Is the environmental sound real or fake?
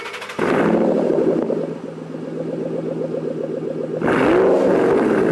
real